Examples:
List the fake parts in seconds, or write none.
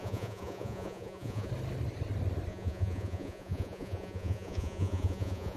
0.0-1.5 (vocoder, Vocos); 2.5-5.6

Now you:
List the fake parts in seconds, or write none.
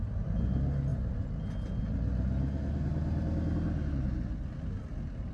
none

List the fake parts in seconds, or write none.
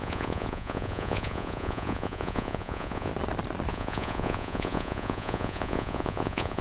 0.0-3.1 (vocoder, Vocos); 3.7-6.6